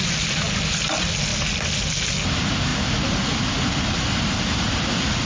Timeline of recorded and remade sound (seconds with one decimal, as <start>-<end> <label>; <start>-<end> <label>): 0.0-5.3 recorded